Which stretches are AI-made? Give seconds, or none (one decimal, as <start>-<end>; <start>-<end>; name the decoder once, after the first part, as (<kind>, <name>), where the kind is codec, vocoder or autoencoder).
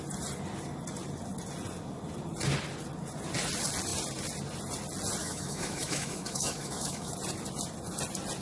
5.2-7.1 (autoencoder, DAC-VAE)